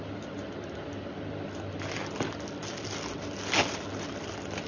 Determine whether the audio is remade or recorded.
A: recorded